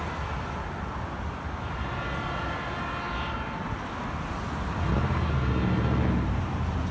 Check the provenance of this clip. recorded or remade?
recorded